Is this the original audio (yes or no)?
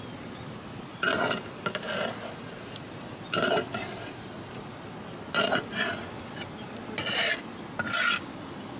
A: yes